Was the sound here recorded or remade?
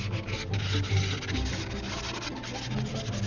recorded